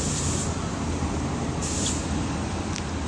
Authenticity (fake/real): real